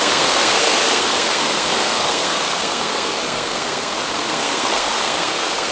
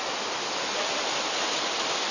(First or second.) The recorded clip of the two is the second